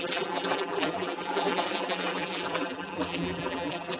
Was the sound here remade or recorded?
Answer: remade